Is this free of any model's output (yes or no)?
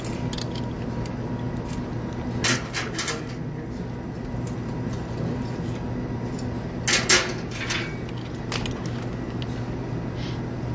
yes